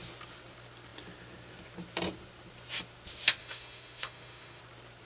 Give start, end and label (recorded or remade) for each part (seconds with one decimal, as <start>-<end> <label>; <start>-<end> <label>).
0.0-3.4 recorded; 3.4-4.6 remade; 4.6-5.1 recorded